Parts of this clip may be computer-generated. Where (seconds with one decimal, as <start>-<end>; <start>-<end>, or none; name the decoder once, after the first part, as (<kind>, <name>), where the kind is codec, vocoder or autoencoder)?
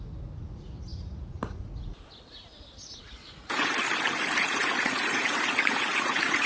0.9-2.1 (vocoder, Vocos); 2.8-3.8; 4.2-6.5